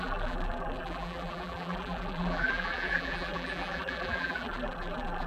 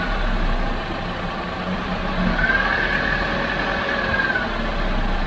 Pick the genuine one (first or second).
second